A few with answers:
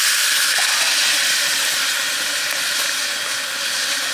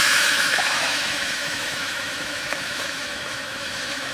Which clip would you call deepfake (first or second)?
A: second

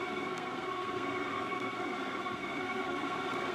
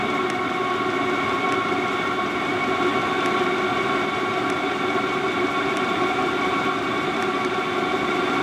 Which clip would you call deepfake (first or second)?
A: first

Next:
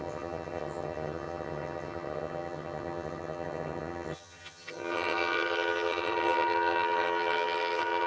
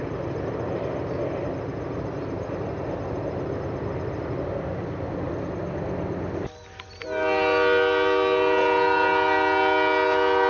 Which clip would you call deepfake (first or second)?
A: first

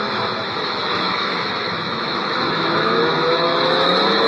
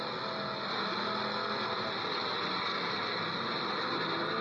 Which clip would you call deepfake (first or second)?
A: first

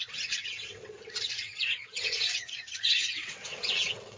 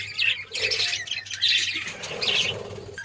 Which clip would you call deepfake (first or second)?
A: first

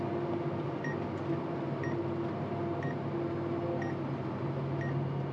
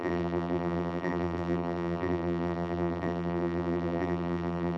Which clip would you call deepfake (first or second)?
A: second